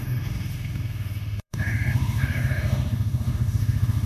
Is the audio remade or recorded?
remade